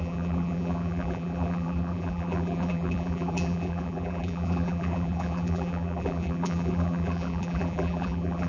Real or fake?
fake